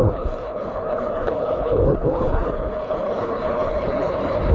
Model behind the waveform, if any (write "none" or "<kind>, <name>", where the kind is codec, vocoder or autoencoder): codec, HILCodec